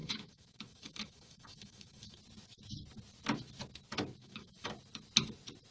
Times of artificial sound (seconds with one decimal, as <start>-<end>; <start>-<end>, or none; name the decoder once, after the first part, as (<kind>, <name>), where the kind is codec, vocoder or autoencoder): 0.0-2.2 (autoencoder, DAC-VAE); 4.2-4.7